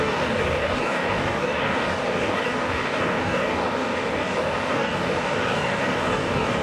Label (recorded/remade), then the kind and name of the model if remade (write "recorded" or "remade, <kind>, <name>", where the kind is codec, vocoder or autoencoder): remade, codec, DAC